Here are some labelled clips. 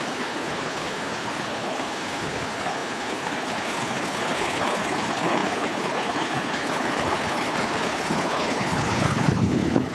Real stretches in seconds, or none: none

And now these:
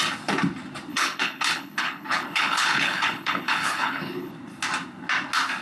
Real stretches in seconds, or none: 0.0-0.9; 4.3-5.6

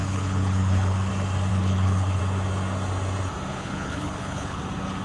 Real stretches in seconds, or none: 1.1-1.5; 2.2-3.5; 4.6-5.0